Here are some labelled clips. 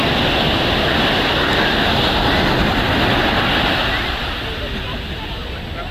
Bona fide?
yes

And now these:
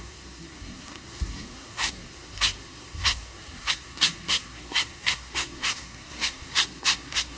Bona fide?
no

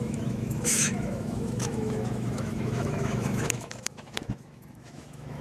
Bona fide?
no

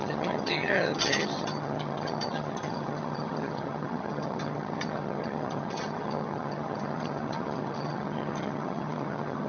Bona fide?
no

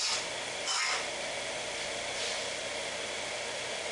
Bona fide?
yes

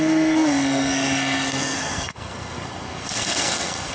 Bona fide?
no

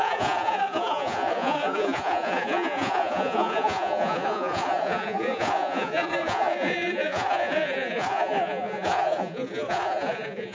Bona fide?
no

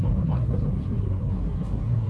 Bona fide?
no